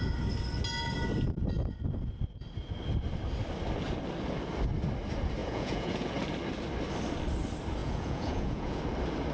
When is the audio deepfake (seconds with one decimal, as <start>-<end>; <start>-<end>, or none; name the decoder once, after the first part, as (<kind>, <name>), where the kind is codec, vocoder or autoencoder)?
5.4-6.1 (vocoder, Vocos); 7.8-8.8